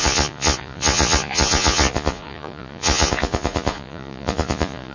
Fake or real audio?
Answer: fake